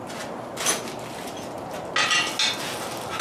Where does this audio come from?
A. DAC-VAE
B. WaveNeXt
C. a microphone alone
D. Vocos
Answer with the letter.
C